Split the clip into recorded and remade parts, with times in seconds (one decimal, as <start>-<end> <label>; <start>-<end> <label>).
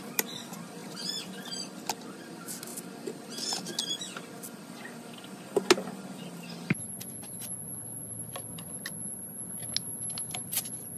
0.0-0.8 recorded; 0.8-1.5 remade; 1.5-11.0 recorded